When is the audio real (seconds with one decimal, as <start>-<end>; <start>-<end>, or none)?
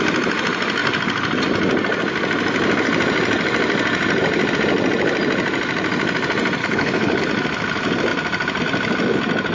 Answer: 0.0-6.6; 7.2-9.5